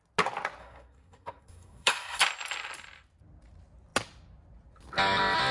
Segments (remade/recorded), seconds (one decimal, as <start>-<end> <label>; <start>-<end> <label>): 0.0-0.6 recorded; 0.6-2.2 remade; 2.2-5.5 recorded